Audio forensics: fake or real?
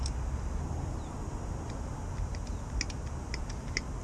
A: real